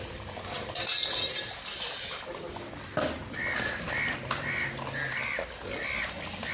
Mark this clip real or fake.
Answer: real